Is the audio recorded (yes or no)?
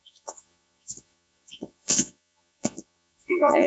no